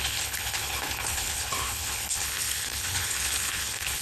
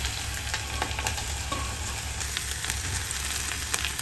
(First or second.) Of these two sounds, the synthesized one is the first